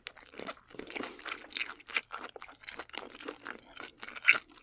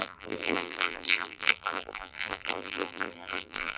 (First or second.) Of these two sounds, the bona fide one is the first